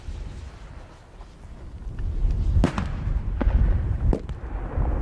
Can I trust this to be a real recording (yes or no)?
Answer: yes